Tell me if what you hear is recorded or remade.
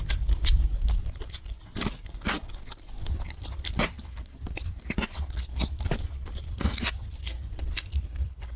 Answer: remade